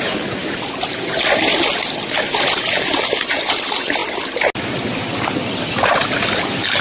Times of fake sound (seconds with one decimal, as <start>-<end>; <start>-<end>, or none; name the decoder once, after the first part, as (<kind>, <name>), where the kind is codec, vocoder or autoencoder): none